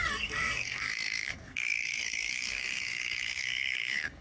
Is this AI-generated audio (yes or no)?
yes